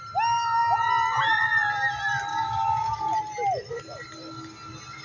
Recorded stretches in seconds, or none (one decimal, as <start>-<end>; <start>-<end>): 0.0-2.3; 3.0-5.0